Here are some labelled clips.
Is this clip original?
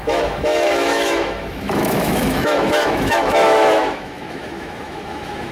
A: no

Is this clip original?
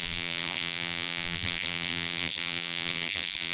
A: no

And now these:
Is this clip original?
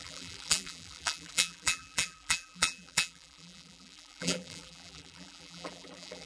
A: no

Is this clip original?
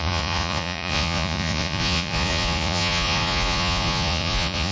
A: no